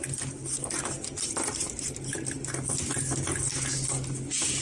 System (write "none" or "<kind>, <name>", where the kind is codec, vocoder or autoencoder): none